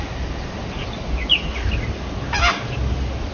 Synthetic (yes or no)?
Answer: no